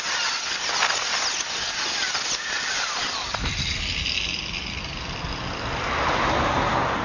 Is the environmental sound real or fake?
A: real